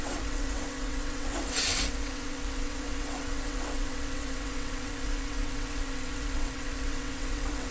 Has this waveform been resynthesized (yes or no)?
yes